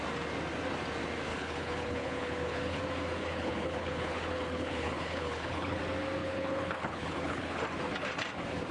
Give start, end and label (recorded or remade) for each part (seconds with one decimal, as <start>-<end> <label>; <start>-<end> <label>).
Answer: 0.0-1.3 recorded; 1.3-2.8 remade; 2.8-3.2 recorded; 3.2-5.8 remade; 5.8-6.2 recorded; 6.2-7.6 remade; 7.6-8.7 recorded